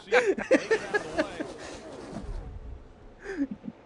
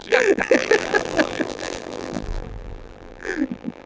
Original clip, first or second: first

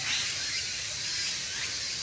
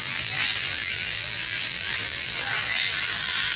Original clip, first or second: first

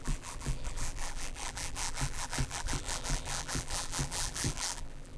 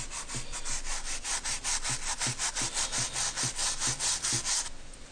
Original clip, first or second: second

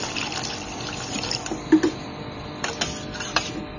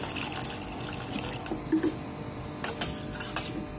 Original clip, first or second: second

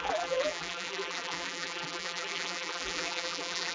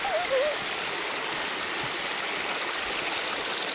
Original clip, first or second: second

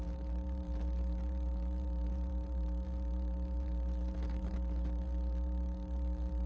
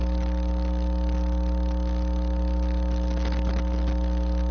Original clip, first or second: second